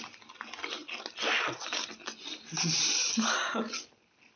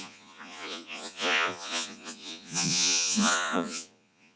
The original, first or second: first